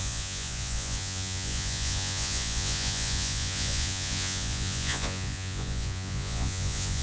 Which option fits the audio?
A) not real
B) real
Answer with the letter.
A